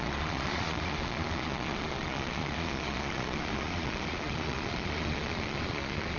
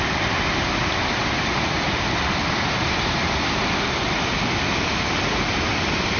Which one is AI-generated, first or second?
first